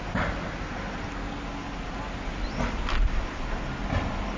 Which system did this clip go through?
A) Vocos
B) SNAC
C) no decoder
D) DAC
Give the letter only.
C